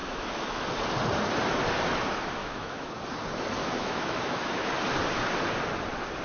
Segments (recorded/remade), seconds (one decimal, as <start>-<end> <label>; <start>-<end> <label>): 0.0-0.6 remade; 0.6-2.4 recorded; 2.4-2.9 remade; 2.9-3.6 recorded; 3.6-4.7 remade; 4.7-6.2 recorded